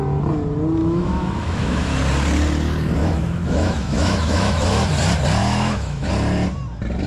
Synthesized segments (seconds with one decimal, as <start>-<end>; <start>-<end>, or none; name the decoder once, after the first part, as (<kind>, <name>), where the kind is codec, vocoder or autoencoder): 0.8-1.9 (autoencoder, DAC-VAE); 3.0-4.8; 5.4-6.1